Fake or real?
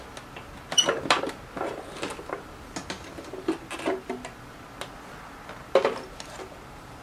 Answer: real